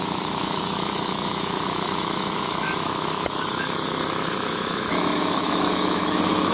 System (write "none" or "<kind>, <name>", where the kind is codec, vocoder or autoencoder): autoencoder, DAC-VAE